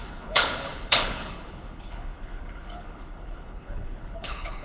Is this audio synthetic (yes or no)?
yes